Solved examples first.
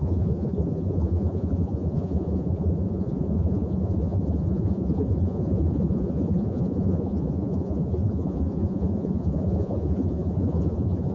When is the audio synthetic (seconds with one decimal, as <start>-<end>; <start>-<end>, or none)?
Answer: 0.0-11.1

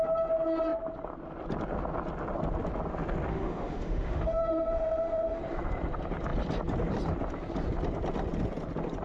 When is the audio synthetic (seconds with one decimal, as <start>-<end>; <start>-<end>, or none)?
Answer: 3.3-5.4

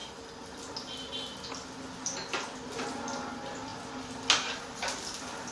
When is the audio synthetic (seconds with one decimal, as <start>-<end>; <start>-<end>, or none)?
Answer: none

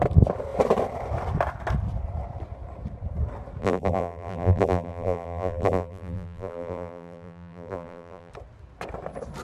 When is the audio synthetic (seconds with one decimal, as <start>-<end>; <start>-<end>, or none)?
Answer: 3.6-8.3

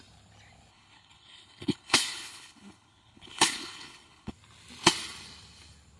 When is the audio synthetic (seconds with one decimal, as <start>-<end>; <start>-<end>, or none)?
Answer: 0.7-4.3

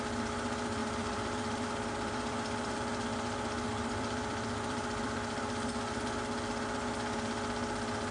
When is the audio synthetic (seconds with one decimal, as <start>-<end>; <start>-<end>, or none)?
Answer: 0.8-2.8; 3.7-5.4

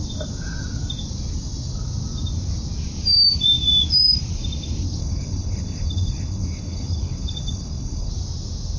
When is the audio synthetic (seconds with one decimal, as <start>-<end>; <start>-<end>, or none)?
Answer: 5.0-8.1

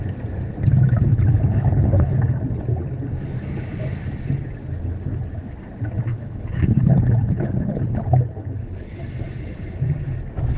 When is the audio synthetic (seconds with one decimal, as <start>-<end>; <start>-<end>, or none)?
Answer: 1.1-2.3; 6.1-9.0